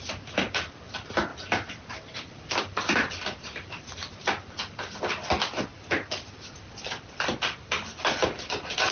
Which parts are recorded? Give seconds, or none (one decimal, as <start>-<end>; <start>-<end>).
1.3-2.5; 5.7-6.5